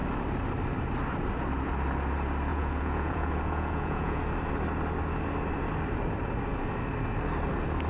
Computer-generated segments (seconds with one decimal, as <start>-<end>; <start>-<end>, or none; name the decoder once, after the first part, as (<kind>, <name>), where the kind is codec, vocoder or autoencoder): 2.5-4.2 (vocoder, Vocos)

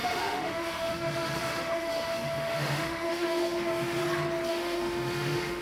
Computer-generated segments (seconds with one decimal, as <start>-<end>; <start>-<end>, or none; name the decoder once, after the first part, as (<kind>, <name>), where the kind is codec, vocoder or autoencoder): 0.0-4.0 (autoencoder, DAC-VAE); 4.5-5.6

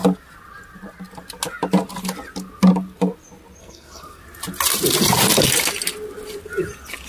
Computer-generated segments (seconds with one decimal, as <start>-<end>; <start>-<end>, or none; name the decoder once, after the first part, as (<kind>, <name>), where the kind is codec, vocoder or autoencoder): 3.6-4.2 (codec, SNAC)

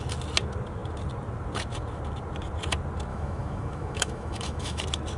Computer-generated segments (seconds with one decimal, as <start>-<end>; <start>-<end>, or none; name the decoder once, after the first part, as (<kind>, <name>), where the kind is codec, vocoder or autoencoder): 3.1-4.8 (autoencoder, DAC-VAE)

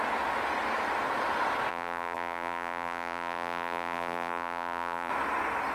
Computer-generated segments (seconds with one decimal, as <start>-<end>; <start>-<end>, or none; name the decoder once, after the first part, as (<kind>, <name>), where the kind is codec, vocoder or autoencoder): 1.7-5.1 (vocoder, BigVGAN v2)

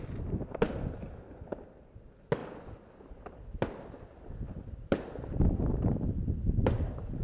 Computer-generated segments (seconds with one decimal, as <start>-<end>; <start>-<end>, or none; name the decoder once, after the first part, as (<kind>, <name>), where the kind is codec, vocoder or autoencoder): none